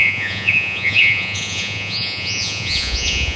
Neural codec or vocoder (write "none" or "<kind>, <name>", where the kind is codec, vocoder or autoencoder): vocoder, Vocos